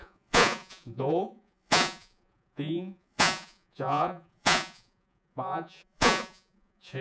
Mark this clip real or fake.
fake